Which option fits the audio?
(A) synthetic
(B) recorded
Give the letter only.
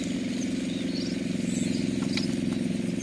B